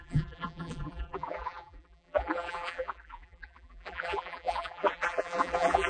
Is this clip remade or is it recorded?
remade